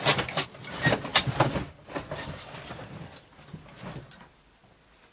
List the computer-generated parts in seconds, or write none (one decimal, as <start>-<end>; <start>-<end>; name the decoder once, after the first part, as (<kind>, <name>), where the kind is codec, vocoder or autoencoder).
none